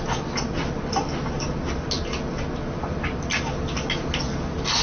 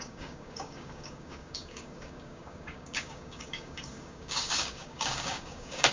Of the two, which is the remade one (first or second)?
second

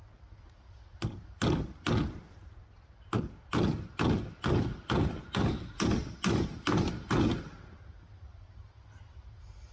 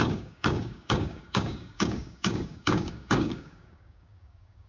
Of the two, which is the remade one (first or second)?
second